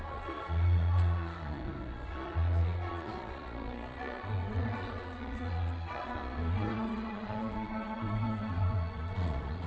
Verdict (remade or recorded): remade